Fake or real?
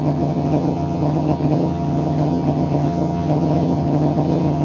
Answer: fake